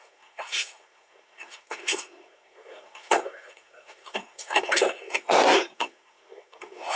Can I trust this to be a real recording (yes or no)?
no